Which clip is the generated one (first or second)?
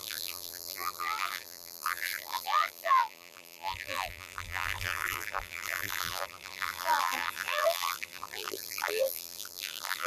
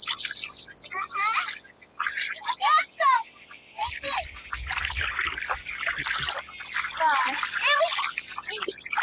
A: first